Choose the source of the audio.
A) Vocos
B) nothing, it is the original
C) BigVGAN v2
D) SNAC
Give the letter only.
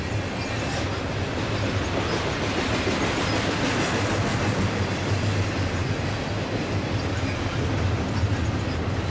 B